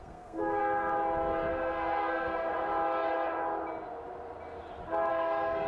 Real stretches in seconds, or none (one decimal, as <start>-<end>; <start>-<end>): 0.6-1.5; 2.5-5.1